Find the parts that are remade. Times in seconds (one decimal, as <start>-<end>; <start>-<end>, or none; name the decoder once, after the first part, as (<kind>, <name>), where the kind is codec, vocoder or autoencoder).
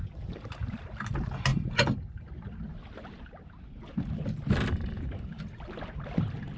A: none